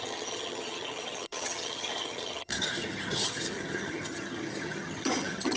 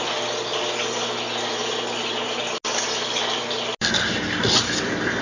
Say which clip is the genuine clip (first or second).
second